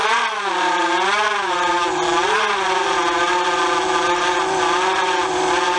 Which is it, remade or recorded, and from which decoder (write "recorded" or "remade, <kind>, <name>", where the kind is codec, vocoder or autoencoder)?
recorded